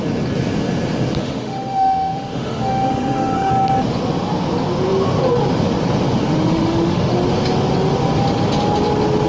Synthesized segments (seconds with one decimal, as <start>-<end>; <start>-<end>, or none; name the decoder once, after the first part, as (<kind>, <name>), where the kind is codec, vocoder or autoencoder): 1.2-3.5 (autoencoder, DAC-VAE); 6.2-7.1